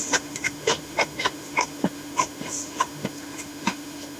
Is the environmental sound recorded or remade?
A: remade